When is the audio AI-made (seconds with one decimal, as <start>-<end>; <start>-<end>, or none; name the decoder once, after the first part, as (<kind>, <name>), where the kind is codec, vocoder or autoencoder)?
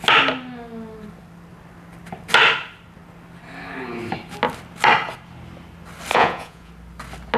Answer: 6.1-6.7 (vocoder, Vocos)